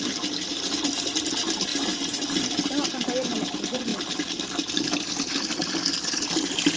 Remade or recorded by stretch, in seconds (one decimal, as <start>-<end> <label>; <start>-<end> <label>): 0.0-6.8 recorded